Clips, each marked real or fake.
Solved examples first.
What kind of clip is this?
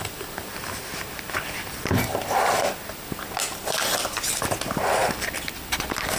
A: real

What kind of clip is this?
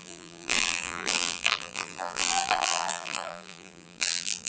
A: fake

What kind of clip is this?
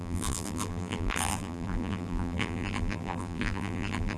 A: fake